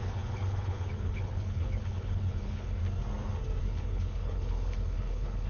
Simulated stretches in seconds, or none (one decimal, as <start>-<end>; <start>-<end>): 0.0-2.8; 3.6-5.5